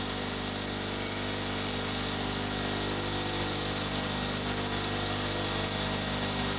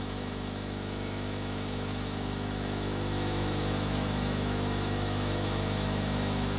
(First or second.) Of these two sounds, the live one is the first